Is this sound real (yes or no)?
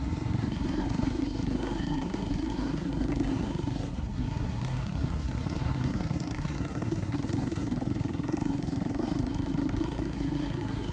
no